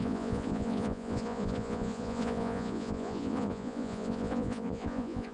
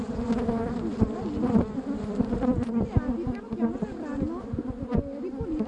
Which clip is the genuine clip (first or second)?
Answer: second